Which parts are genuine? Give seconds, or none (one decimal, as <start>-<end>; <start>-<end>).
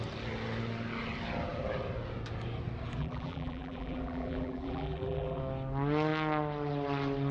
0.0-3.0; 5.4-7.3